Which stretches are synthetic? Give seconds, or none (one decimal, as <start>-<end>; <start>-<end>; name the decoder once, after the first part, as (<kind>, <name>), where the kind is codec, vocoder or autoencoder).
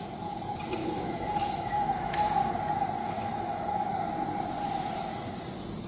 0.8-2.5 (autoencoder, DAC-VAE); 3.0-3.9